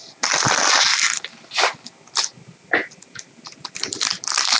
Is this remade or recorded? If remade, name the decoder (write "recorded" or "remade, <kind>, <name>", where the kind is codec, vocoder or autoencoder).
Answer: recorded